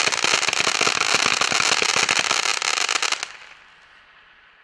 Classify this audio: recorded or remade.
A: recorded